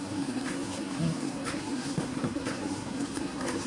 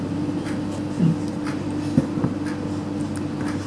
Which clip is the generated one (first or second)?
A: first